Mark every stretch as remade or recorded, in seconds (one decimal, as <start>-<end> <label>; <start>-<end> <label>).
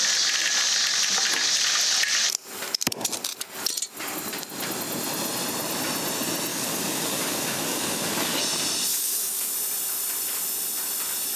0.0-6.5 recorded; 6.5-8.4 remade; 8.4-8.9 recorded; 8.9-9.5 remade; 9.5-11.4 recorded